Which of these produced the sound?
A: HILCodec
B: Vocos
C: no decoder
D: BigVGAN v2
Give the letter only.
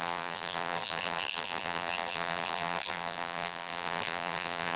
D